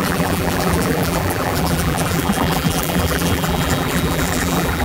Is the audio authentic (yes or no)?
no